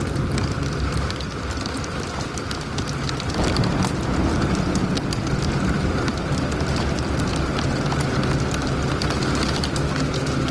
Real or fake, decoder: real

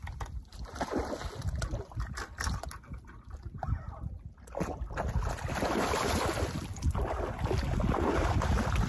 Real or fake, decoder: real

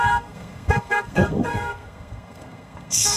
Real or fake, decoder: fake, codec, SNAC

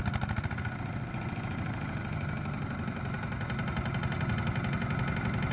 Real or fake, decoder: real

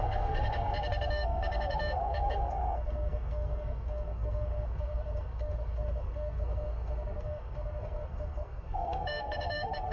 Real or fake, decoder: fake, codec, SNAC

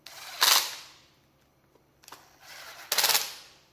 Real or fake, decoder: real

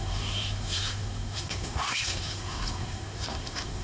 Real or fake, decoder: fake, codec, SNAC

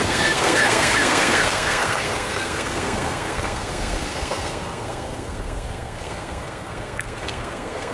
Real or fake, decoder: fake, codec, SNAC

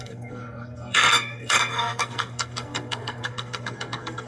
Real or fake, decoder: fake, codec, SNAC